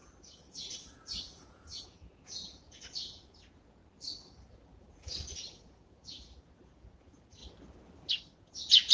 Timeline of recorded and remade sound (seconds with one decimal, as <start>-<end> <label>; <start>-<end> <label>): 0.0-3.8 remade; 3.8-4.5 recorded; 4.5-7.4 remade; 7.4-8.1 recorded; 8.1-8.9 remade